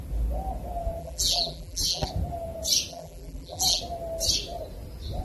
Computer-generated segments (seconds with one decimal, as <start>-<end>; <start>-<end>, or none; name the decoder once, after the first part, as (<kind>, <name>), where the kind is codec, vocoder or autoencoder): 1.0-2.1 (vocoder, BigVGAN v2); 2.9-3.8